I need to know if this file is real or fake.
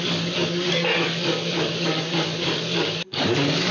fake